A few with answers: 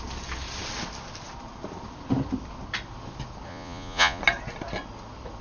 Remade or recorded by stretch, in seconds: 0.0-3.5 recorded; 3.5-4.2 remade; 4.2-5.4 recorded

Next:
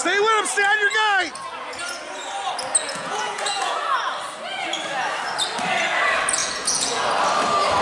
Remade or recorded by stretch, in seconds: 0.0-2.8 recorded; 2.8-3.8 remade; 3.8-6.4 recorded; 6.4-7.0 remade; 7.0-7.8 recorded

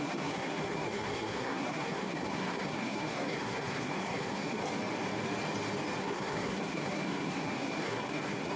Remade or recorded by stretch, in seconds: 0.0-4.6 remade; 4.6-6.0 recorded; 6.0-8.6 remade

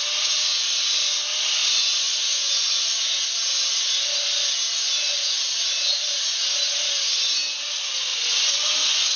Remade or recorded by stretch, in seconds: 0.0-1.6 recorded; 1.6-3.0 remade; 3.0-8.1 recorded; 8.1-9.2 remade